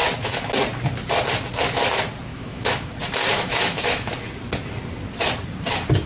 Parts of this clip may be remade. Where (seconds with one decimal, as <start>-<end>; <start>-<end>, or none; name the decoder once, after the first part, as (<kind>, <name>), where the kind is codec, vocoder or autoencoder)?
2.3-2.9 (autoencoder, DAC-VAE); 3.3-4.1